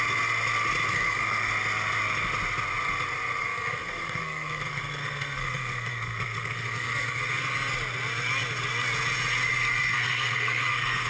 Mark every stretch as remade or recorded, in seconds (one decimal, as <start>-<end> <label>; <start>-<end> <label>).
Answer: 0.0-0.9 recorded; 0.9-1.5 remade; 1.5-3.4 recorded; 3.4-7.4 remade; 7.4-9.5 recorded; 9.5-11.1 remade